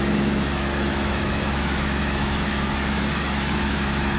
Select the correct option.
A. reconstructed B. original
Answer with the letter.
A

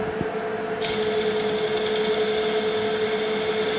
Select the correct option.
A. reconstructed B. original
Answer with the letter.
B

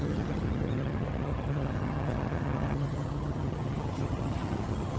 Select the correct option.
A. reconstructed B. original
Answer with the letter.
A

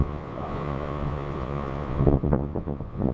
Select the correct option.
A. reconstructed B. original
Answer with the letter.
A